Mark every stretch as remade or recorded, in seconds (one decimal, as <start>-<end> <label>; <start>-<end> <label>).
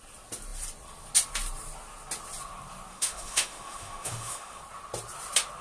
0.0-2.9 recorded; 2.9-4.6 remade; 4.6-5.6 recorded